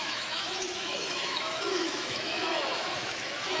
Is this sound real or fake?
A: fake